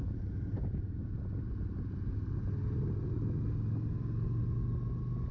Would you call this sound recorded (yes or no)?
yes